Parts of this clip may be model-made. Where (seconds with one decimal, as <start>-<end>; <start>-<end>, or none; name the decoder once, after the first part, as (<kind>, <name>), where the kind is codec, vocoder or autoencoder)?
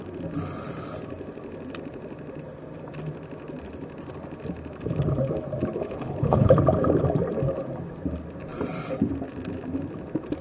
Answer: 5.8-6.5 (codec, HILCodec)